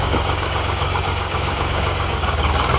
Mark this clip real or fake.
fake